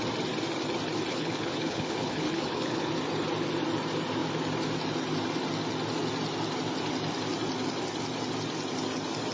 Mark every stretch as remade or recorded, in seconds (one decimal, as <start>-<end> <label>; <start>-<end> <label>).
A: 0.0-1.1 recorded; 1.1-2.9 remade; 2.9-9.3 recorded